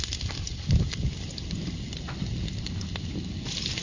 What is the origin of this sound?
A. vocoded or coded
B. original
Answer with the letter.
B